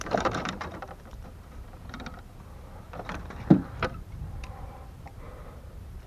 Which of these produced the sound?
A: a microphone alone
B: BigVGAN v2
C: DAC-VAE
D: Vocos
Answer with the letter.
B